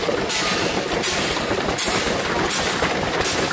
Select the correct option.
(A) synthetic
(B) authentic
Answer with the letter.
B